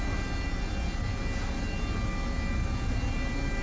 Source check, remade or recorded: recorded